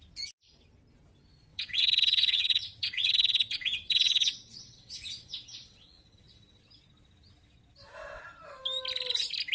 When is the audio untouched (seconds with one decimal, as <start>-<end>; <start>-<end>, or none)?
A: 0.0-1.5; 6.6-9.5